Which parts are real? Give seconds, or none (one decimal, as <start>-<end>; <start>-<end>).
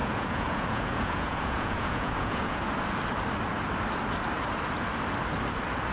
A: 2.7-5.9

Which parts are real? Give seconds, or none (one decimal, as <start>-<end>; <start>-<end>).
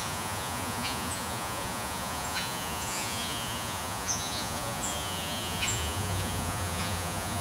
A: none